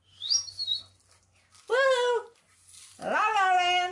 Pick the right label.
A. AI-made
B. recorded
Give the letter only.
B